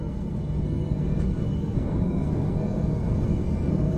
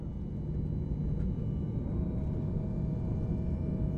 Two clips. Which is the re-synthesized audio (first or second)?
first